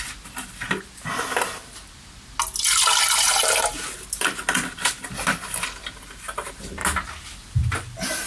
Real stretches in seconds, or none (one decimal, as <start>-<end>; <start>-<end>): 0.0-8.3